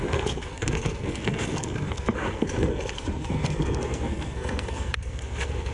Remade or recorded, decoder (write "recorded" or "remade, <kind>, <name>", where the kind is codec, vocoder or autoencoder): remade, codec, SNAC